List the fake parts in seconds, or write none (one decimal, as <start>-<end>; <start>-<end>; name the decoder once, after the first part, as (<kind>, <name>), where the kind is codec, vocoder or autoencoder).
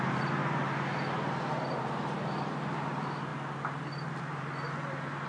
0.0-0.4 (vocoder, BigVGAN v2); 1.8-3.3; 4.2-5.3